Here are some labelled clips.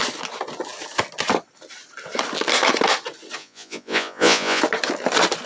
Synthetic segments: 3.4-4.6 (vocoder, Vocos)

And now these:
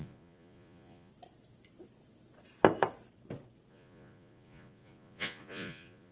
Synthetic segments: 0.0-1.1 (vocoder, Vocos); 3.7-6.1

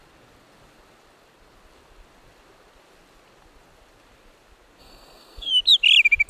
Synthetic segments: 4.8-5.5 (codec, SNAC)